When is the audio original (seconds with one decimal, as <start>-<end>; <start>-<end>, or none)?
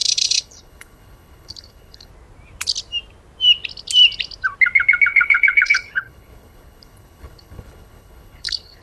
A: 2.1-5.1